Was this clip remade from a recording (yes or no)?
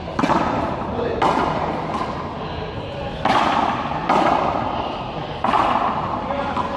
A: no